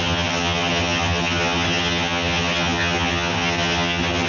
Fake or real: fake